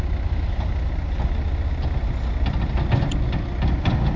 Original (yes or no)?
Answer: yes